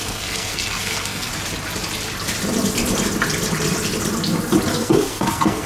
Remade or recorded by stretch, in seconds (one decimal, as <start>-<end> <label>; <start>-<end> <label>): 0.0-1.3 remade; 1.3-4.7 recorded; 4.7-5.7 remade